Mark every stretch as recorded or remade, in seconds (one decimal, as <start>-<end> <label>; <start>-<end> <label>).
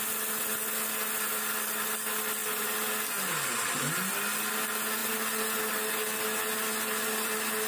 0.0-7.7 recorded